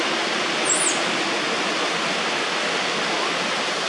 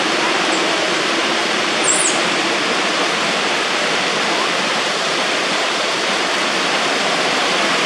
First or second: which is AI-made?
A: second